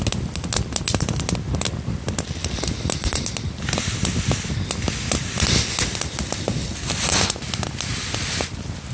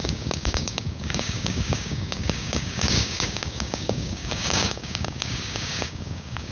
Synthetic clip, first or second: second